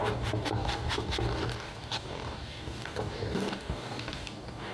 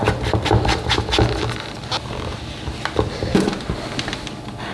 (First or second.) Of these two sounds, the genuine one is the second